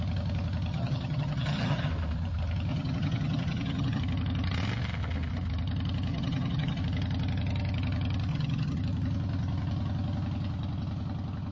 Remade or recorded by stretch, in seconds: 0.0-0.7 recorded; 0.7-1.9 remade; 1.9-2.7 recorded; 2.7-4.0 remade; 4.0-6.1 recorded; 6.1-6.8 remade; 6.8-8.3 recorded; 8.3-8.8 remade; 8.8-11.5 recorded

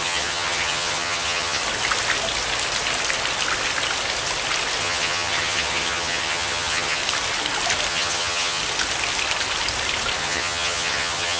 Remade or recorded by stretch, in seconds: 0.0-1.6 remade; 1.6-4.8 recorded; 4.8-7.0 remade; 7.0-7.9 recorded; 7.9-8.6 remade; 8.6-10.2 recorded; 10.2-11.4 remade

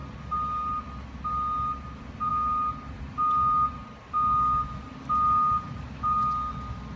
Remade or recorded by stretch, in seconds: 0.0-7.0 recorded

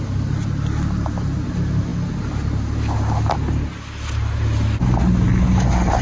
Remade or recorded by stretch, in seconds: 0.0-6.0 recorded